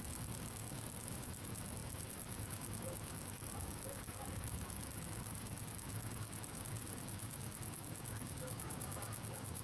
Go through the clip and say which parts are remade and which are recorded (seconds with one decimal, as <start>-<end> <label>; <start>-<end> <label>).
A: 0.0-9.6 remade